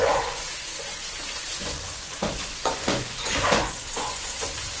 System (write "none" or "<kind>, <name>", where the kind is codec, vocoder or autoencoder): vocoder, Vocos